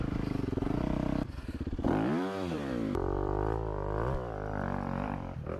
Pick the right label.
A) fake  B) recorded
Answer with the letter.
A